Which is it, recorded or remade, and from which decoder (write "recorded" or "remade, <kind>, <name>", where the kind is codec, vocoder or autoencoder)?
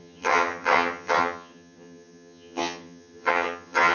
remade, vocoder, HiFi-GAN